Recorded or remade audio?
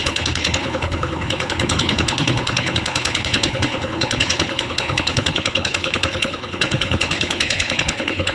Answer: remade